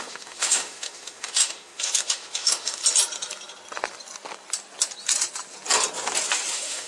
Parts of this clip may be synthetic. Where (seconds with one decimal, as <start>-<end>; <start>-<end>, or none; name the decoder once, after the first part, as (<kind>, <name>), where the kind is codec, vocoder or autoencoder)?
0.0-2.8 (autoencoder, DAC-VAE); 6.5-6.9